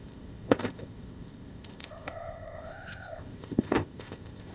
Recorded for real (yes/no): no